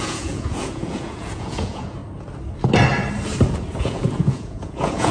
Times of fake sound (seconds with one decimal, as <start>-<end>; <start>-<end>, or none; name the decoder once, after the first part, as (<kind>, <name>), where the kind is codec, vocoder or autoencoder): 0.0-2.0 (vocoder, Vocos); 3.8-5.1